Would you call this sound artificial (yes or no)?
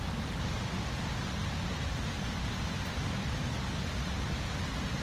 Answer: no